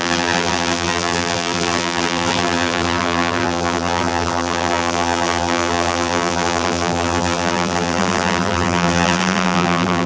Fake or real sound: fake